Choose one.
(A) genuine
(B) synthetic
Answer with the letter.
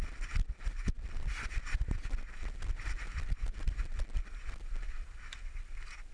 A